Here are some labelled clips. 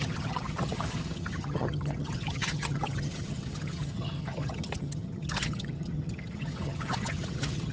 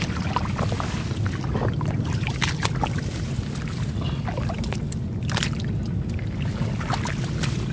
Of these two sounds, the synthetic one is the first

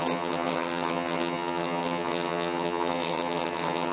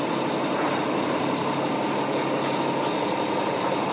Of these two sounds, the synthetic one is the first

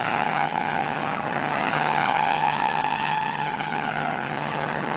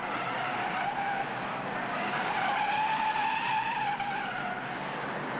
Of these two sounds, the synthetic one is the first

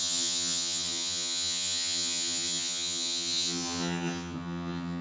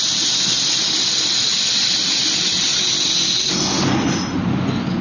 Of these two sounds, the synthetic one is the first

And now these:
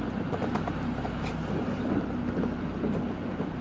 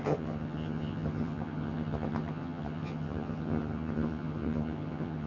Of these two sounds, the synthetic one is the second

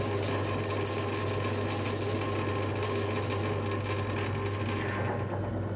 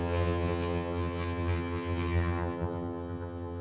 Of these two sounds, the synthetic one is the second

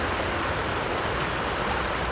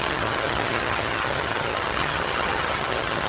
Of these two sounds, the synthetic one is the second